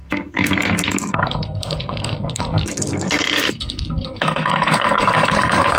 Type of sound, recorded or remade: remade